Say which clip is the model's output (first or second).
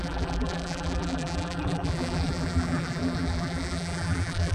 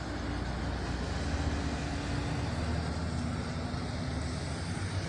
first